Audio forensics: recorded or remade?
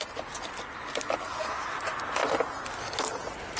recorded